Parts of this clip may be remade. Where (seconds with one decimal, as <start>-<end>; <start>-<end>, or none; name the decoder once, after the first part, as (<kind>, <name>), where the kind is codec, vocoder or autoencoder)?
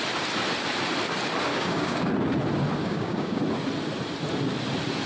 1.5-2.1 (codec, DAC); 2.8-3.4